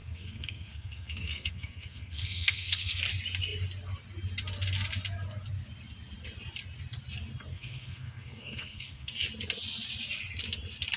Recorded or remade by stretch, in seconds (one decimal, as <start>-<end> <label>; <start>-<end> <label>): 0.0-3.0 remade; 3.0-7.5 recorded; 7.5-9.1 remade; 9.1-11.0 recorded